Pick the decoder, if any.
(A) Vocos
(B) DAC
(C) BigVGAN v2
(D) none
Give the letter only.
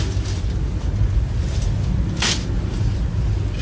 D